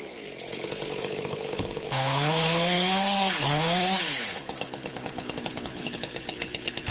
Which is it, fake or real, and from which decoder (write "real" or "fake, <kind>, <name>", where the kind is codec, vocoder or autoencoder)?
fake, codec, HILCodec